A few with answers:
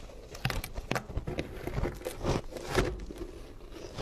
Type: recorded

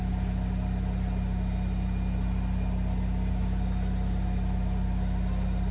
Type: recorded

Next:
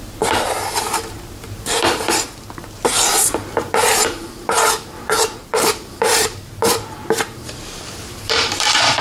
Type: remade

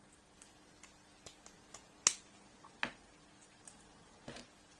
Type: recorded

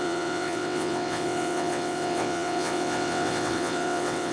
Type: remade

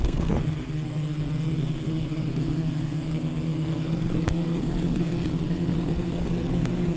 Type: remade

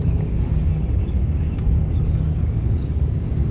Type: remade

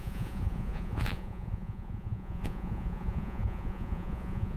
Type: remade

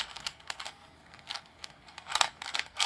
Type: remade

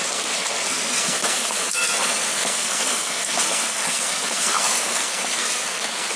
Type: remade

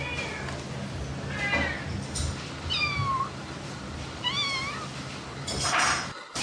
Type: recorded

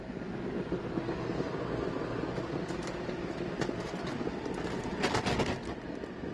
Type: recorded